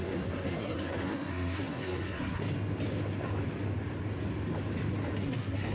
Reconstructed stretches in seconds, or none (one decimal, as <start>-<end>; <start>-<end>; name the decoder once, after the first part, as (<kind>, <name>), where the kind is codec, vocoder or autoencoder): 0.0-2.4 (codec, SNAC); 5.2-5.7